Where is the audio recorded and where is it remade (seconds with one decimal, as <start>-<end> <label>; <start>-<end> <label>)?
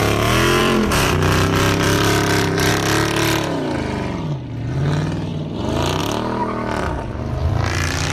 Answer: 0.0-0.6 recorded; 0.6-2.7 remade; 2.7-8.1 recorded